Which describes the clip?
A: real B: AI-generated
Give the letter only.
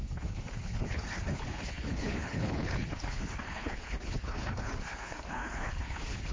B